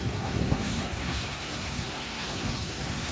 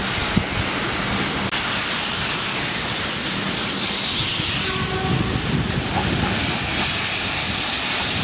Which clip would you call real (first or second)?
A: second